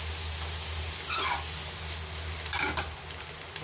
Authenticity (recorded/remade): recorded